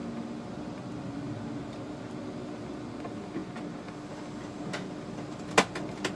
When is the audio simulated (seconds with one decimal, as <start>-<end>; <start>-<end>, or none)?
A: none